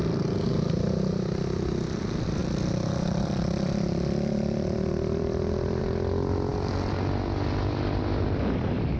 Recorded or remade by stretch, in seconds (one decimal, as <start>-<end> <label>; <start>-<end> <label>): 0.0-2.4 recorded; 2.4-5.8 remade; 5.8-9.0 recorded